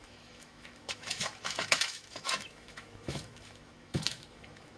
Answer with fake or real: fake